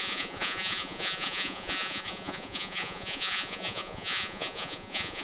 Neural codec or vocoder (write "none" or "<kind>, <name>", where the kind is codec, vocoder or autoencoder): vocoder, Vocos